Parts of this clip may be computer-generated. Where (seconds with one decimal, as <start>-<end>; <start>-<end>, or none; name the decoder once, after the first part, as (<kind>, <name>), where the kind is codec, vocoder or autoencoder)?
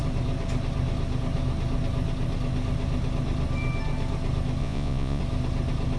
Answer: 4.6-5.2 (vocoder, Vocos)